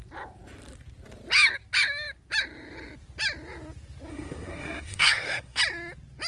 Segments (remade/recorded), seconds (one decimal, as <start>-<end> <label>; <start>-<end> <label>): 0.0-4.1 recorded; 4.1-5.6 remade; 5.6-6.3 recorded